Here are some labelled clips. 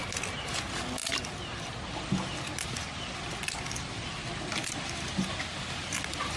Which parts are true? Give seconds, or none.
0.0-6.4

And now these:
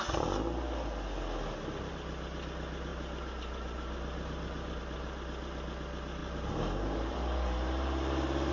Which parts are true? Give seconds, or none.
0.0-2.9; 4.8-6.2

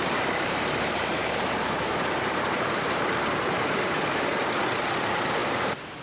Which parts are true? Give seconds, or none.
4.3-4.9

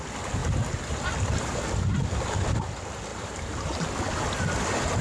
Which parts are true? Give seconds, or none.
0.0-3.1; 3.9-5.0

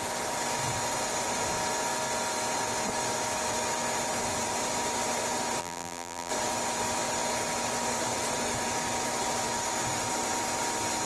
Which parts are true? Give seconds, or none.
0.0-5.6; 6.3-11.1